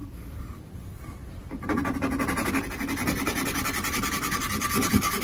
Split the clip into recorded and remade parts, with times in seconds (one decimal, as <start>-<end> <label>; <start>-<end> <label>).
0.0-0.6 remade; 0.6-5.2 recorded